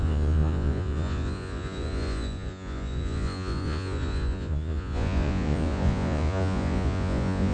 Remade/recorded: remade